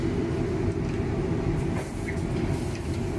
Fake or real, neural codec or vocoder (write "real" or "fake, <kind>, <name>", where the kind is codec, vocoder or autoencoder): real